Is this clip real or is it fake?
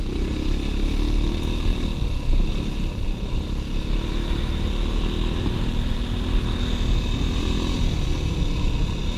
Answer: real